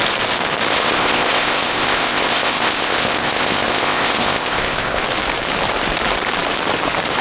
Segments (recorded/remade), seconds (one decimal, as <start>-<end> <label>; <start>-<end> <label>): 0.0-0.7 recorded; 0.7-5.0 remade; 5.0-7.2 recorded